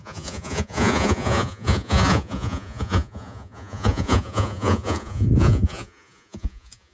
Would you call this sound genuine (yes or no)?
no